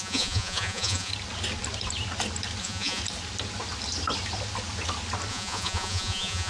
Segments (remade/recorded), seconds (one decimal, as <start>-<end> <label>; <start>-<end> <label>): 0.0-1.1 remade; 1.1-2.6 recorded; 2.6-3.0 remade; 3.0-5.3 recorded; 5.3-6.5 remade